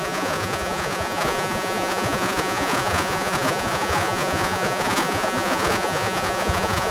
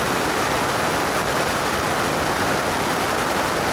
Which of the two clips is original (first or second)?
second